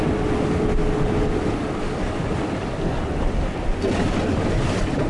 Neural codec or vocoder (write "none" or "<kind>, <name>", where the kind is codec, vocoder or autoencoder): none